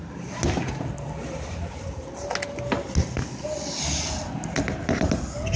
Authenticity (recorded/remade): recorded